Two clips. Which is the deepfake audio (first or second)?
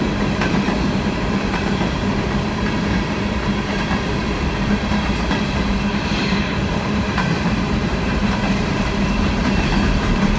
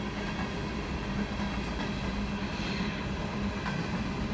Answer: first